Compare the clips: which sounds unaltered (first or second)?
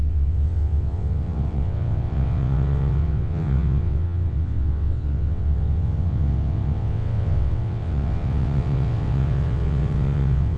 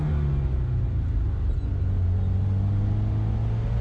second